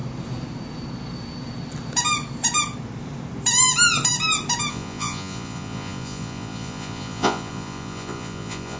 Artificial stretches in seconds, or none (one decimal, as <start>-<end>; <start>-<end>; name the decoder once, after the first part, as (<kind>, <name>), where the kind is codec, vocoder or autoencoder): 4.7-8.8 (vocoder, Vocos)